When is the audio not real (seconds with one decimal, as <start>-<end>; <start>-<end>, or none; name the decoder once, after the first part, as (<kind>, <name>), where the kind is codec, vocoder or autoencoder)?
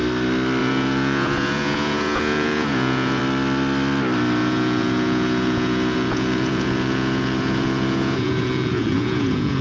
0.6-3.2 (vocoder, Vocos); 4.4-9.6